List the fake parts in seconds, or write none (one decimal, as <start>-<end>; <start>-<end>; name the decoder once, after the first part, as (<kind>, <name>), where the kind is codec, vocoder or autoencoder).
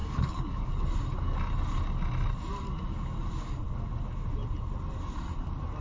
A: 0.0-0.7 (codec, DAC)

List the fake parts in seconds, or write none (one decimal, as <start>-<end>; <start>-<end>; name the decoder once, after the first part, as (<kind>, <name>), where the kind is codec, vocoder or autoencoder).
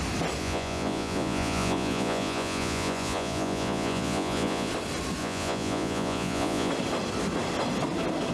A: 0.4-4.7 (vocoder, Vocos); 5.2-6.7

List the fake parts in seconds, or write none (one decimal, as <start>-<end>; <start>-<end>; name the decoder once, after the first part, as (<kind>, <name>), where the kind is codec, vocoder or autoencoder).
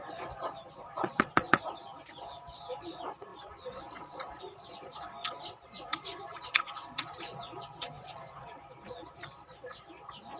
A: 0.0-10.4 (vocoder, Vocos)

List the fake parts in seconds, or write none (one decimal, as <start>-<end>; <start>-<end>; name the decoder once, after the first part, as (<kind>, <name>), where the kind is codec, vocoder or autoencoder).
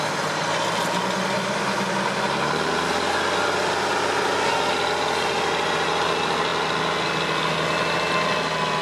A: none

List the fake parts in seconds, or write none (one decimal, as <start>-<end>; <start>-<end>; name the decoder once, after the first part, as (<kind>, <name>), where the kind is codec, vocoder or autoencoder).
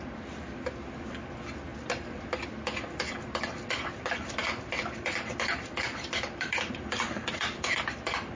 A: 4.4-7.5 (vocoder, BigVGAN v2)